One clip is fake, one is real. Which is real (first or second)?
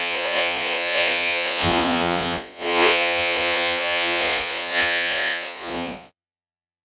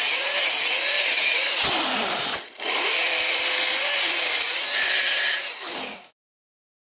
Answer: second